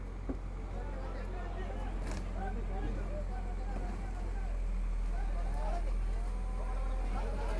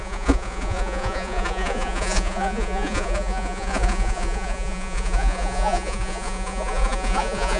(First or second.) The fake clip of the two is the second